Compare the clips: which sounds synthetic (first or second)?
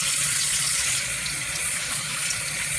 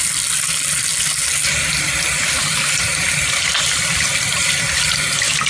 first